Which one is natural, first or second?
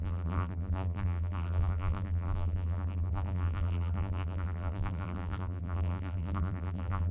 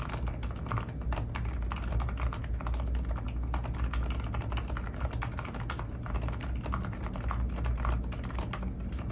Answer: second